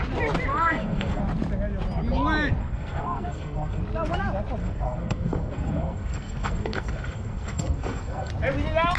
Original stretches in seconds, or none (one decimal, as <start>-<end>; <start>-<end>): 0.0-0.5; 1.2-2.6; 3.8-4.6; 8.3-9.0